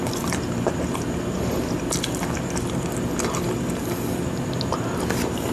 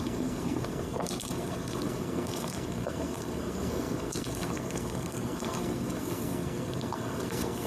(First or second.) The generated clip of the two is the second